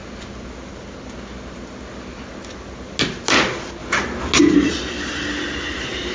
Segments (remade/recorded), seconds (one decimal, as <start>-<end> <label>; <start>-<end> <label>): 0.0-6.1 recorded